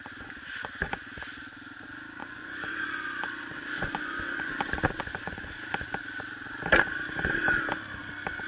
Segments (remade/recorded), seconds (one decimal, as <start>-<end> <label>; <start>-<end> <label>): 0.0-2.2 recorded; 2.2-5.5 remade; 5.5-8.5 recorded